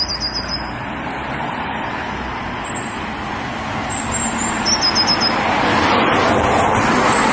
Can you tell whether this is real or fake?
real